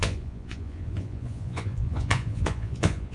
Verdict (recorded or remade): remade